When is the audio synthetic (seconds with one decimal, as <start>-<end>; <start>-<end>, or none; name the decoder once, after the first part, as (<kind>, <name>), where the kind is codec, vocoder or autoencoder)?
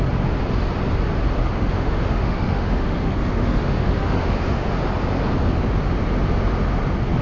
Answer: 1.4-4.7 (autoencoder, DAC-VAE)